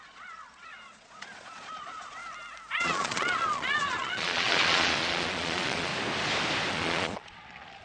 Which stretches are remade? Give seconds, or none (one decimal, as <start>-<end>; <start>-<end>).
0.0-2.2; 2.7-5.9; 6.7-7.8